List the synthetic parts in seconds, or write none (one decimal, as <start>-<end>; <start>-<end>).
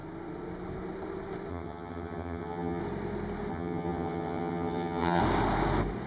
1.5-2.8; 3.5-5.2